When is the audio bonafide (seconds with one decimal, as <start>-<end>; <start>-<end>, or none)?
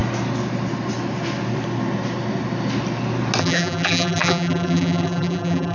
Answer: 0.0-3.4